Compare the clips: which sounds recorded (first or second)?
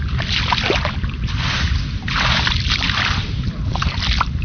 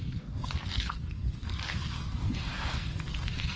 first